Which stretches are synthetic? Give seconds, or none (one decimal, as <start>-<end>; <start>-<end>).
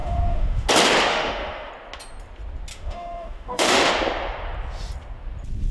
0.0-0.7; 1.1-1.7; 2.7-3.9